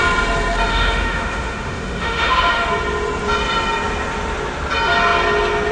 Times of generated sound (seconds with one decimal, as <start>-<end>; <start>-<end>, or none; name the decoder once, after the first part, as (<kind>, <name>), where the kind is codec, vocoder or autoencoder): 0.7-2.7 (autoencoder, DAC-VAE)